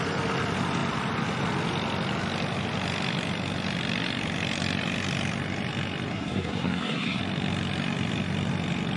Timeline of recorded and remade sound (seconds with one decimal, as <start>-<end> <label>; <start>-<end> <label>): 0.0-6.1 recorded; 6.1-7.2 remade; 7.2-9.0 recorded